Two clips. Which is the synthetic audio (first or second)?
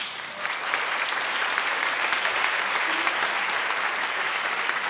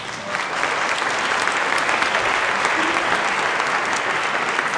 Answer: first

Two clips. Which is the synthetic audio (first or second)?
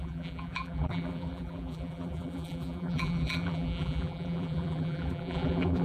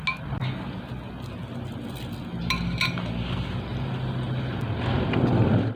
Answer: first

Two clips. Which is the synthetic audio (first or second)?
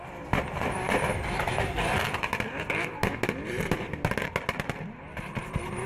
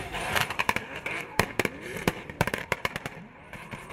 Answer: second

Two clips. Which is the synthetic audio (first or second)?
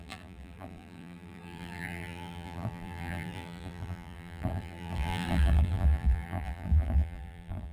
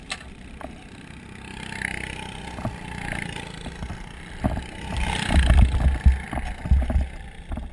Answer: first